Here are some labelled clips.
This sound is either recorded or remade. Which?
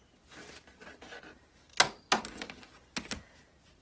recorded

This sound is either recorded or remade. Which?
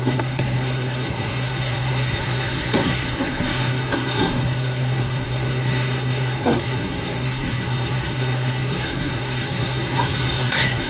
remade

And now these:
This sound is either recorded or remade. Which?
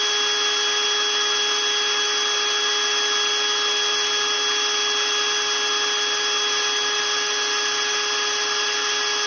recorded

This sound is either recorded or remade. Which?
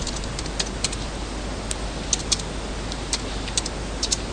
recorded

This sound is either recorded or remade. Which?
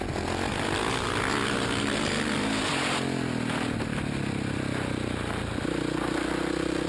recorded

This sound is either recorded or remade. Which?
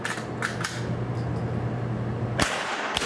recorded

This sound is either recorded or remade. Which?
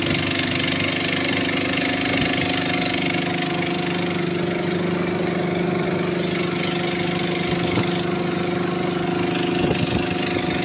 recorded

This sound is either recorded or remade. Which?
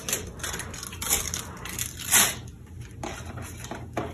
recorded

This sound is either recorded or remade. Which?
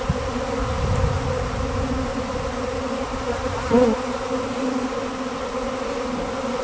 recorded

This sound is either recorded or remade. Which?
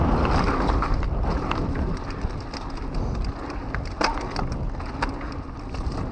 recorded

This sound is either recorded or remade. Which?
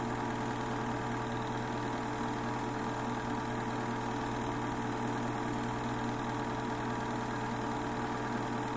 recorded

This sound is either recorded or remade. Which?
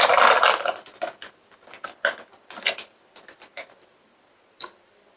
recorded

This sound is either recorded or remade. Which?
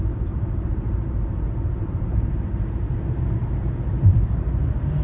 remade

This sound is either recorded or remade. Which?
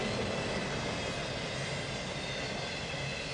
recorded